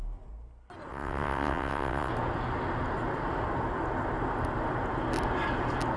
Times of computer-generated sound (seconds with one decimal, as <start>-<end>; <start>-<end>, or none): 0.9-2.1